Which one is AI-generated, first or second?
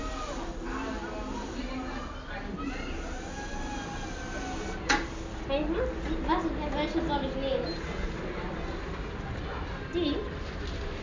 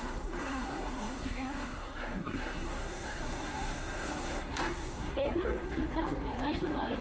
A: second